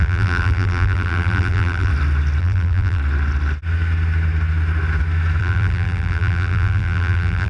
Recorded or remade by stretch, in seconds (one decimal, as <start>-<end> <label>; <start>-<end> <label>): 0.0-1.9 remade; 1.9-2.4 recorded; 2.4-3.0 remade; 3.0-5.4 recorded; 5.4-7.5 remade